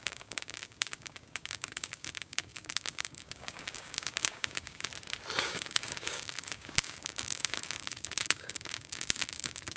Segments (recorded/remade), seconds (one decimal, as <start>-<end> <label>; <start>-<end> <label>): 0.0-4.9 remade; 4.9-5.4 recorded; 5.4-9.8 remade